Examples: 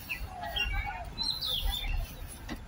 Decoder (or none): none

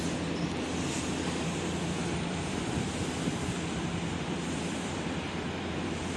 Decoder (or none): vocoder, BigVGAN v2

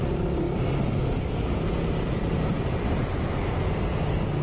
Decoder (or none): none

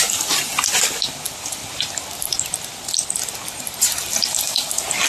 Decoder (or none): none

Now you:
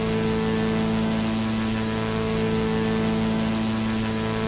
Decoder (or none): none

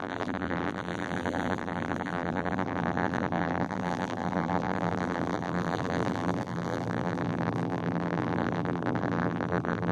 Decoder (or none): vocoder, BigVGAN v2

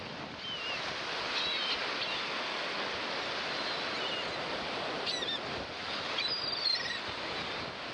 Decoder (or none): none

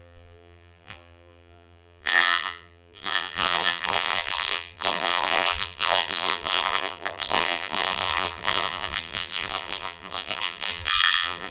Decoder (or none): vocoder, BigVGAN v2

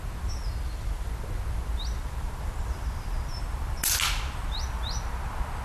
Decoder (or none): none